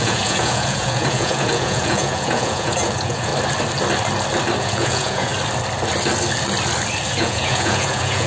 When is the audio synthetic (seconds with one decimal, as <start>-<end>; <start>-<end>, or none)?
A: 0.0-3.3; 4.6-5.3; 7.2-8.3